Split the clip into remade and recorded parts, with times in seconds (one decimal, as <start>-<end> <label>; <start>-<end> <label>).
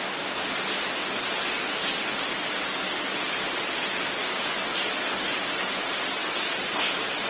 0.0-6.2 recorded; 6.2-7.3 remade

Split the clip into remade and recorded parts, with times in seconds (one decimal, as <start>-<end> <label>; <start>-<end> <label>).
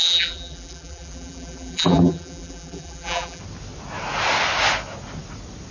0.0-3.4 remade; 3.4-5.7 recorded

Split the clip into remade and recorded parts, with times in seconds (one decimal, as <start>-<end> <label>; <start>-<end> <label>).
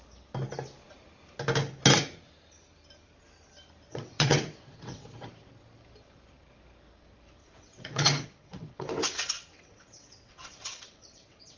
0.0-3.9 recorded; 3.9-5.3 remade; 5.3-7.4 recorded; 7.4-11.6 remade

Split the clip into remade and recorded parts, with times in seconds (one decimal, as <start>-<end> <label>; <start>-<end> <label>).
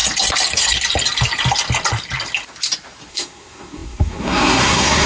0.0-3.1 recorded; 3.1-5.1 remade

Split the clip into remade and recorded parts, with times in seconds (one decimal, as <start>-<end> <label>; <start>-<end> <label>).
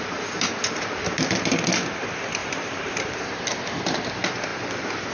0.0-2.4 recorded; 2.4-4.1 remade; 4.1-5.1 recorded